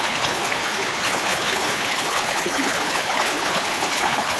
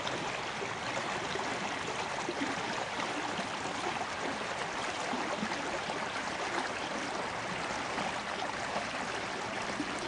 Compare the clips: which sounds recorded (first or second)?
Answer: second